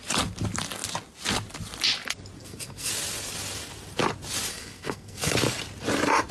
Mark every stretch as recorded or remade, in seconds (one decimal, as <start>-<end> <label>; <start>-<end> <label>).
0.0-2.4 recorded; 2.4-2.9 remade; 2.9-4.5 recorded; 4.5-5.3 remade; 5.3-6.3 recorded

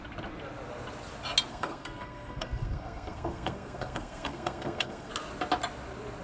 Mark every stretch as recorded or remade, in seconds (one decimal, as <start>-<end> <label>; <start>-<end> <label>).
0.0-1.5 recorded; 1.5-5.1 remade; 5.1-6.2 recorded